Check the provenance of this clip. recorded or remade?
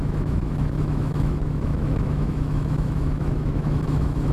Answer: remade